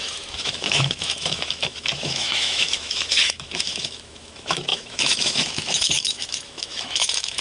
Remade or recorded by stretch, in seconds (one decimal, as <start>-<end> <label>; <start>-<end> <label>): 0.0-7.4 remade

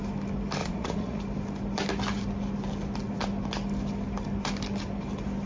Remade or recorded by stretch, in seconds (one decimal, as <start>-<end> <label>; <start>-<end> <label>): 0.0-0.6 recorded; 0.6-1.2 remade; 1.2-5.5 recorded

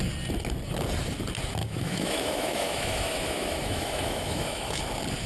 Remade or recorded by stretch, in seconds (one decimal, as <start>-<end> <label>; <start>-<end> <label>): 0.0-1.6 recorded; 1.6-4.8 remade; 4.8-5.3 recorded

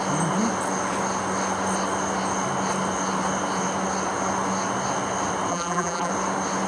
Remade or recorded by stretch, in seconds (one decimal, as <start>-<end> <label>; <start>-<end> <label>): 0.0-5.5 recorded; 5.5-6.1 remade; 6.1-6.7 recorded

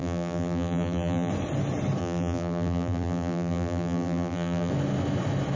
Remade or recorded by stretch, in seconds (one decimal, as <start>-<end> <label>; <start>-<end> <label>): 0.0-1.3 remade; 1.3-2.0 recorded; 2.0-4.7 remade; 4.7-5.6 recorded

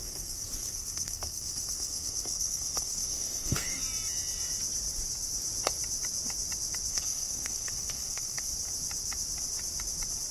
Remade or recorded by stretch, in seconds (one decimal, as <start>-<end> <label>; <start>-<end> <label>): 0.0-3.8 remade; 3.8-6.9 recorded; 6.9-8.5 remade; 8.5-10.3 recorded

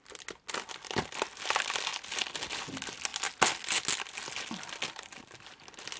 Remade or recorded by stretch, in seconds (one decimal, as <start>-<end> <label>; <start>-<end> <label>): 0.0-6.0 recorded

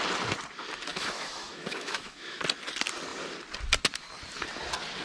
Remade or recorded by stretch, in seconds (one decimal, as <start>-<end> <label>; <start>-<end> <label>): 0.0-0.9 recorded; 0.9-2.4 remade; 2.4-5.0 recorded